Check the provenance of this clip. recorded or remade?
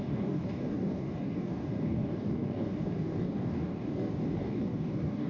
remade